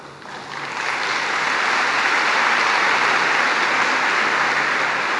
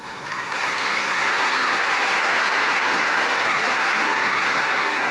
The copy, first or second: second